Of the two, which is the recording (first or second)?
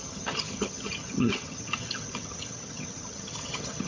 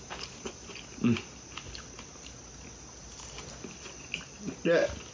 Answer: second